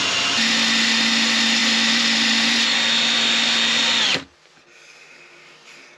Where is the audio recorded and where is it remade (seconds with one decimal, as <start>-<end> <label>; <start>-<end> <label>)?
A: 0.0-6.0 recorded